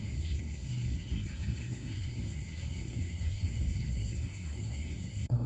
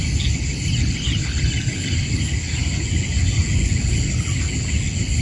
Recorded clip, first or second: second